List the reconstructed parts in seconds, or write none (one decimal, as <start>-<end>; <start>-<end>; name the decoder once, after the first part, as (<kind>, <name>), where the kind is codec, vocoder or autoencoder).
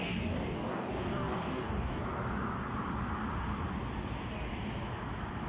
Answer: 0.0-2.0 (codec, DAC)